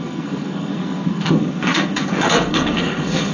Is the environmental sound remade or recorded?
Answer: remade